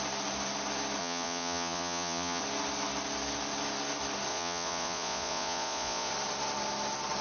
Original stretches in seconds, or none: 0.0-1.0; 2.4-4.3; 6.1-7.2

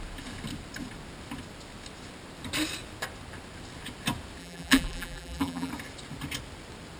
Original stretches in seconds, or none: 0.0-4.4; 5.7-7.0

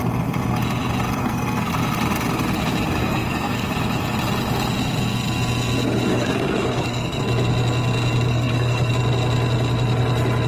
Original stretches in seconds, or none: 0.0-1.2; 1.7-3.0; 3.7-6.1; 7.2-8.3; 8.9-10.5

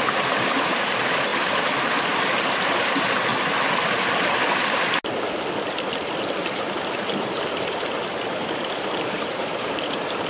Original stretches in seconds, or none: 3.3-6.4

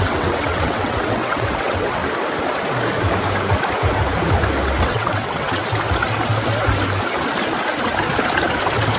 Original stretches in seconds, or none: 2.0-4.8; 5.6-9.0

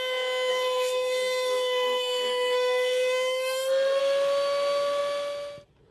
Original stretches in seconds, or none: 0.0-0.5; 4.0-5.9

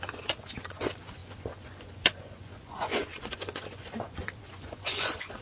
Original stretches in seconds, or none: none

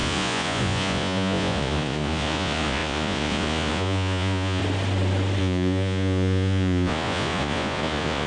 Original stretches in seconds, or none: 4.6-5.4